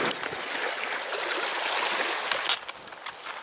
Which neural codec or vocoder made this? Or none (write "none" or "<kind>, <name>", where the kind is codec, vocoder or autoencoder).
none